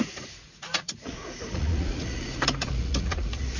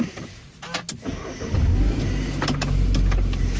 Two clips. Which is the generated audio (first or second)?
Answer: first